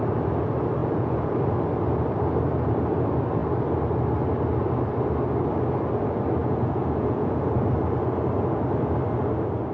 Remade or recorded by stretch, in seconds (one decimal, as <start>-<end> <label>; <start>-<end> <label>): 0.0-0.8 recorded; 0.8-1.3 remade; 1.3-6.4 recorded; 6.4-7.4 remade; 7.4-9.7 recorded